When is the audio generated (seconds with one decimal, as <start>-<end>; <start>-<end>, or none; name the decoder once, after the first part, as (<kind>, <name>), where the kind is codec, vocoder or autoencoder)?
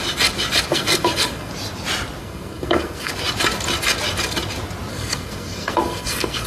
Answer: 0.7-1.5 (codec, SNAC); 2.2-3.1; 4.9-6.5